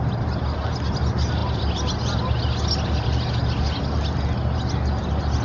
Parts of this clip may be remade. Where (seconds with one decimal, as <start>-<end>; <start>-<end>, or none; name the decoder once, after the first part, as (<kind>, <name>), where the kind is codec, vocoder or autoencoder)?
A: none